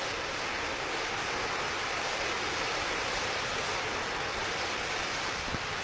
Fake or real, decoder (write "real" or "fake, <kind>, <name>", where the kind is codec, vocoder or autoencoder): fake, vocoder, BigVGAN v2